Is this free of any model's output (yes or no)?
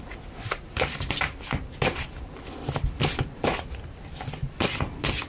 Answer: yes